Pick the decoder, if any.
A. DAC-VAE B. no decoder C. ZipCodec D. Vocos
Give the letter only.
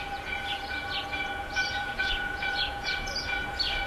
D